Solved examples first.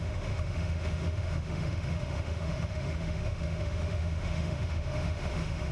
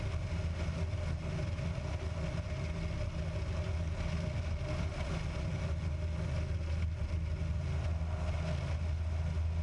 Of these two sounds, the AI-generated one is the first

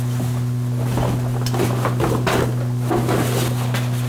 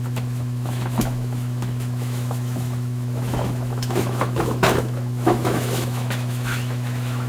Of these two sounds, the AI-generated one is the second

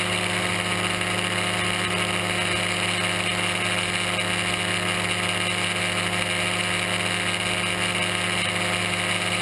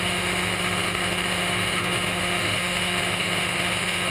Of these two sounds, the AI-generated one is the second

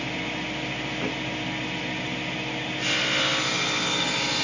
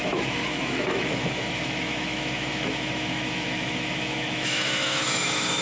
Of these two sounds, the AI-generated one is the second